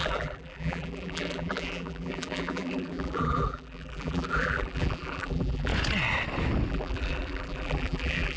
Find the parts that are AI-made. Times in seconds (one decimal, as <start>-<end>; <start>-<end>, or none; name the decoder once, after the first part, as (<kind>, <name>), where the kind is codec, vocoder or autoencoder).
0.0-5.7 (vocoder, BigVGAN v2); 6.7-8.4